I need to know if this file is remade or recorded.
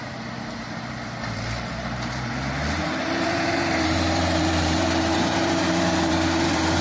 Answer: remade